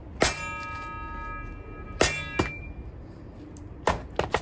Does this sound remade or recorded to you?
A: recorded